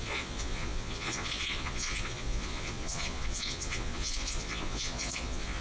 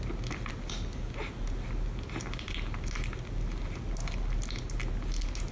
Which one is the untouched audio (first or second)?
second